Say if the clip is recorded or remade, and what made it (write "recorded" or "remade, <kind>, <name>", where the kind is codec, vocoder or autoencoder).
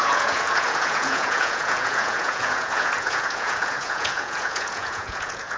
remade, vocoder, Vocos